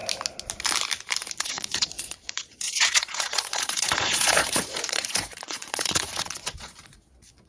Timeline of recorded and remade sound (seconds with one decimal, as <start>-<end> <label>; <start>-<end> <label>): 0.0-1.4 recorded; 1.4-7.5 remade